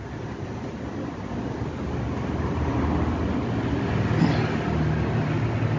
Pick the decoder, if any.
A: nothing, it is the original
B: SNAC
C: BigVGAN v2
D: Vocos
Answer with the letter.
A